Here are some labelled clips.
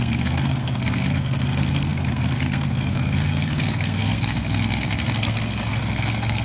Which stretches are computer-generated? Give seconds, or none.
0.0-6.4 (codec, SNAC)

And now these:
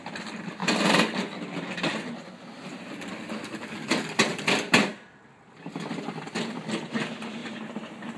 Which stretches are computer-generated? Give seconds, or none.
0.6-2.1 (vocoder, BigVGAN v2); 4.3-4.9

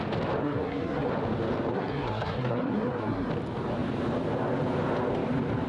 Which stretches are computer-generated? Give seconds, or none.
0.4-1.1 (codec, SNAC); 1.7-3.3